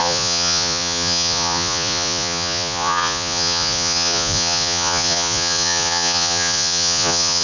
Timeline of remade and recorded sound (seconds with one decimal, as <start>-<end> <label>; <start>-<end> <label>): 0.0-7.4 remade